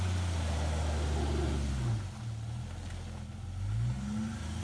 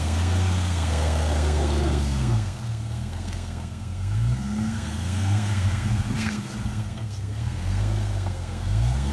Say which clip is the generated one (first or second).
second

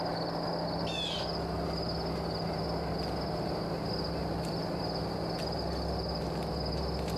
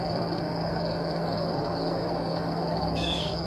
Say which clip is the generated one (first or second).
second